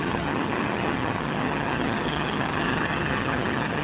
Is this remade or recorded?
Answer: remade